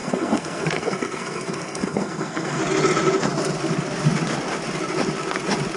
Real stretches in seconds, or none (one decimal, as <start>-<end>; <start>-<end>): 2.6-5.8